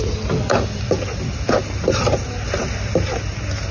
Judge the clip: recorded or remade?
recorded